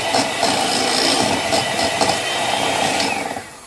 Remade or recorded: recorded